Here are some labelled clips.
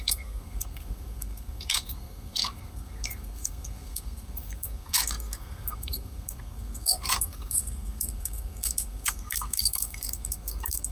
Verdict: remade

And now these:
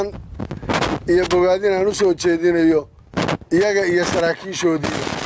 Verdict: recorded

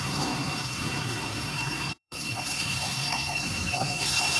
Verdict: remade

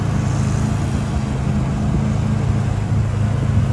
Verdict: recorded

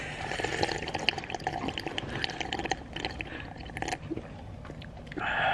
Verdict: recorded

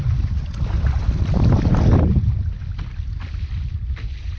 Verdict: recorded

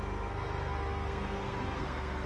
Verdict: remade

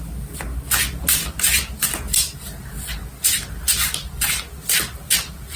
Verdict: recorded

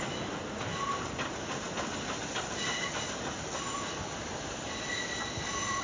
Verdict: recorded